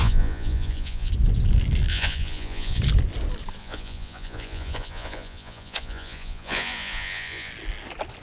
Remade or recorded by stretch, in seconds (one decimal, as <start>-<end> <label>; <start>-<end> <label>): 0.0-1.1 remade; 1.1-1.9 recorded; 1.9-2.8 remade; 2.8-3.6 recorded; 3.6-7.5 remade; 7.5-8.2 recorded